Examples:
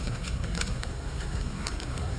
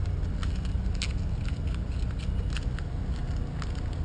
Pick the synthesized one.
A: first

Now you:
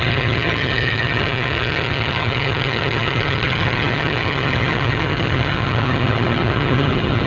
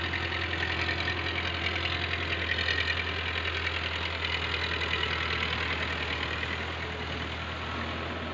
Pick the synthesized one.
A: first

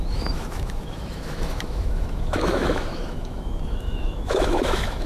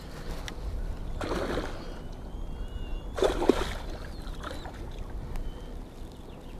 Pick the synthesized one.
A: first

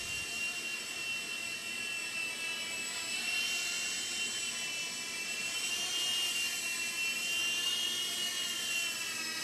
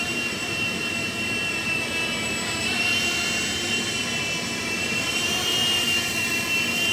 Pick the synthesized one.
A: second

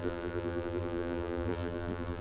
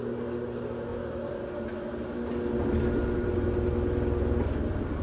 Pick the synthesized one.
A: first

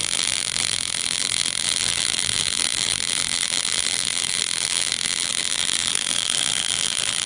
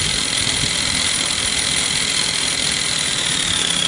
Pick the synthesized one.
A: first